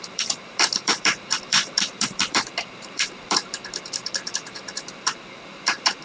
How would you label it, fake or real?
fake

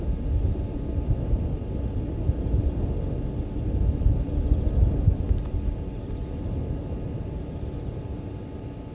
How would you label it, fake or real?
real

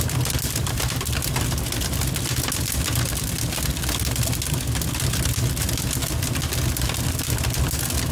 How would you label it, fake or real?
real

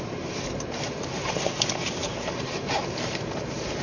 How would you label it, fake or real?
fake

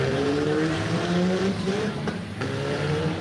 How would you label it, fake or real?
fake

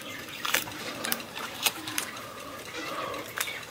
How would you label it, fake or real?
fake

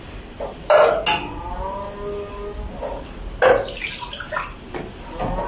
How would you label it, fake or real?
real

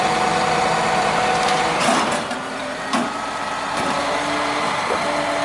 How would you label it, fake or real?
fake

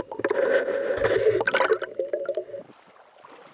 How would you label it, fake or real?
real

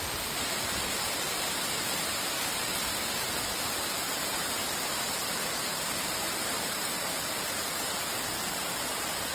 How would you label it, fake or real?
fake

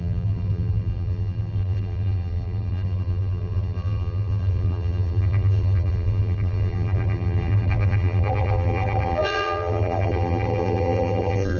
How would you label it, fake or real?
fake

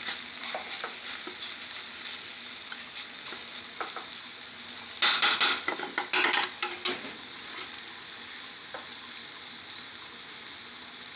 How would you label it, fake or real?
real